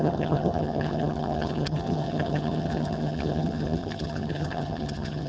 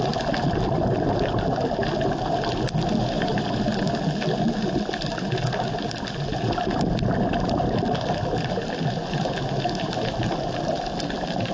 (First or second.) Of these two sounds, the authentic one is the second